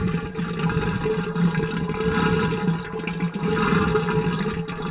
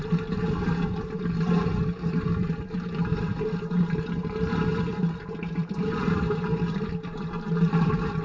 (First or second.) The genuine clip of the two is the first